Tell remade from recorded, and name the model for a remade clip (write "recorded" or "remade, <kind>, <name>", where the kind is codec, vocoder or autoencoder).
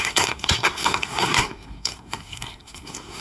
remade, codec, SNAC